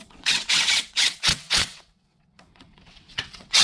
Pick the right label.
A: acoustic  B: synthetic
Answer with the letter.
B